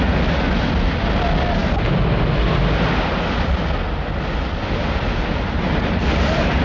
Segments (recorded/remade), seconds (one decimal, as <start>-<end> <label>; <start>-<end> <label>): 0.0-6.6 recorded